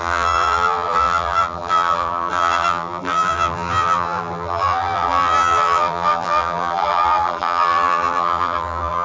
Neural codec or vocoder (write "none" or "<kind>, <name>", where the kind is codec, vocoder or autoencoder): vocoder, BigVGAN v2